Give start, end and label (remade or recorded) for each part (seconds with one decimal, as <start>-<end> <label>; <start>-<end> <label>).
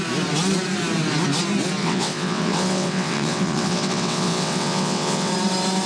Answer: 0.0-1.8 recorded; 1.8-5.3 remade; 5.3-5.9 recorded